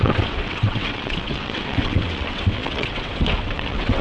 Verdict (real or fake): fake